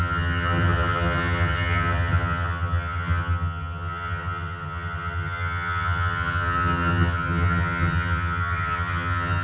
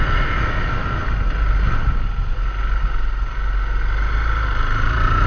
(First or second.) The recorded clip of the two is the second